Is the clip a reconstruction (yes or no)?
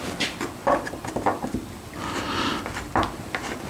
no